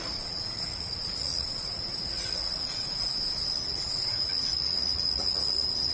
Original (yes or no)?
no